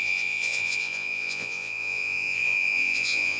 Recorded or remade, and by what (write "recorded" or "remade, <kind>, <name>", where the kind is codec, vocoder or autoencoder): remade, vocoder, Vocos